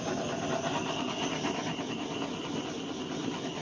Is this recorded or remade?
recorded